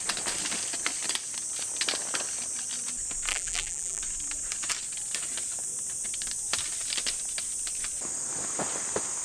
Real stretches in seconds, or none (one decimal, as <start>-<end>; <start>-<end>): 0.0-3.3; 4.0-9.2